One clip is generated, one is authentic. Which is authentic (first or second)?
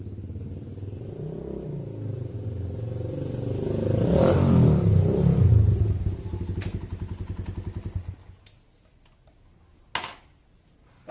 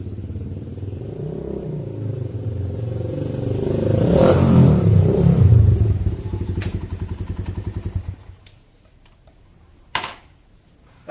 first